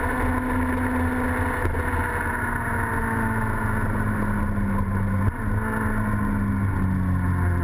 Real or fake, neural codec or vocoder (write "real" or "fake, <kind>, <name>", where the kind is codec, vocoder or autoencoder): real